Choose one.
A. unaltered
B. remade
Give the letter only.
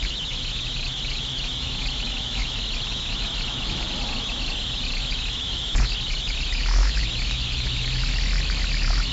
B